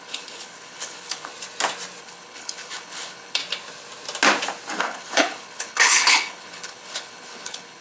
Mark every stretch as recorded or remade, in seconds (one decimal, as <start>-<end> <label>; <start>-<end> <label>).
0.0-1.3 remade; 1.3-2.0 recorded; 2.0-3.4 remade; 3.4-4.8 recorded; 4.8-7.8 remade